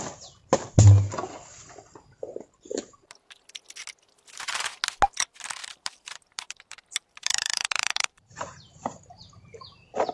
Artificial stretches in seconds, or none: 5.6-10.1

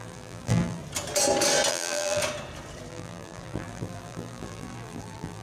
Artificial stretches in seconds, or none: 0.0-0.8; 1.7-2.2; 2.9-5.4

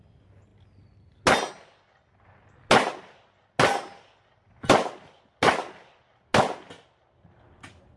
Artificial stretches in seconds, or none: none